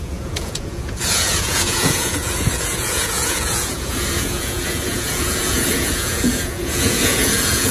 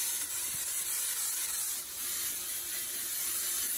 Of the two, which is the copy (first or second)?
first